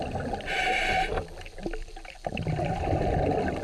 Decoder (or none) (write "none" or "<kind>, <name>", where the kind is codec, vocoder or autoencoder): none